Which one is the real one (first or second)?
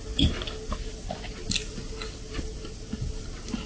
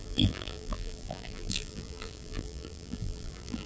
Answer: first